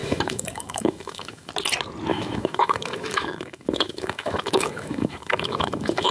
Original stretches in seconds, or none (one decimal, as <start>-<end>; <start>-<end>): 1.5-2.1